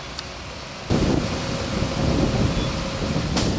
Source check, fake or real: real